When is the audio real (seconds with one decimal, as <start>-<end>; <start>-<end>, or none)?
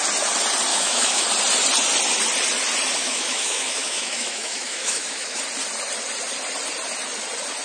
0.0-0.7; 1.2-3.0; 5.4-7.6